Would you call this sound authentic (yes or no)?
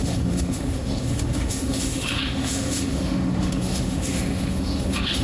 no